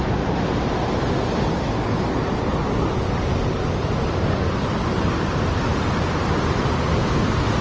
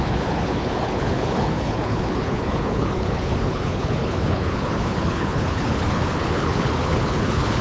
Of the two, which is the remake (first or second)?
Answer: second